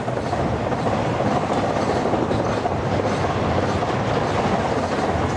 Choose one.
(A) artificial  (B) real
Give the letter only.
B